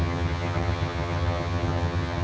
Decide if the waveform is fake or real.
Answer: fake